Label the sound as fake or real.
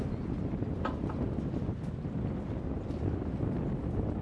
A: real